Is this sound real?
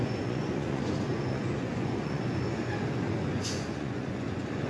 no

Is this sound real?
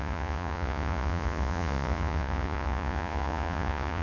no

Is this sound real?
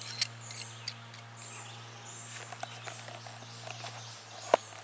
yes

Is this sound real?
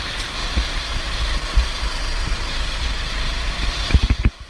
no